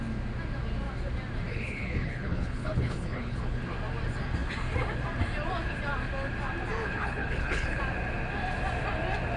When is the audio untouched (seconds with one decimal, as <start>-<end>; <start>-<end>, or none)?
0.0-1.5; 3.6-6.8; 7.8-9.4